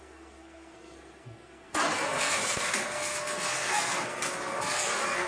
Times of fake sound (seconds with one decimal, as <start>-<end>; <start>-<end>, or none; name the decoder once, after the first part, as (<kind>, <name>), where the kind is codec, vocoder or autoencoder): 0.0-5.3 (codec, SNAC)